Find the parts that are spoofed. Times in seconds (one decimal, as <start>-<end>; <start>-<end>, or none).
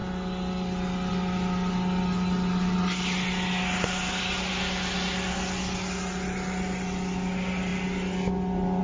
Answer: none